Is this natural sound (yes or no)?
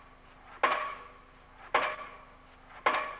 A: yes